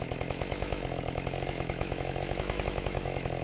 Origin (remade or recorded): remade